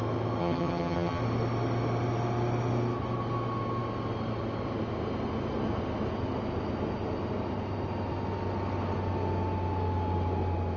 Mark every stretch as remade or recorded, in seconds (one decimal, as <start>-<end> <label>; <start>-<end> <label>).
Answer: 0.0-0.4 recorded; 0.4-1.2 remade; 1.2-10.8 recorded